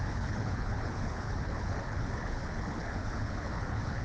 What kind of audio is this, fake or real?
fake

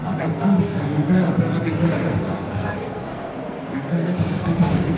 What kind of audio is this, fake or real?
fake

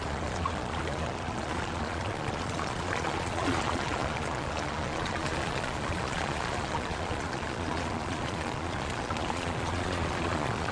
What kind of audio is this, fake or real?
fake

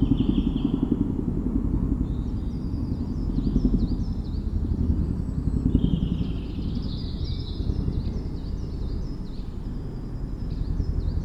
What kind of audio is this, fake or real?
real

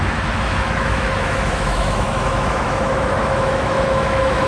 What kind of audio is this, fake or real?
fake